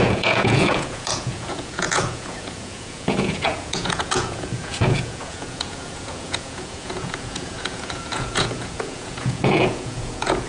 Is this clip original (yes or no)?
no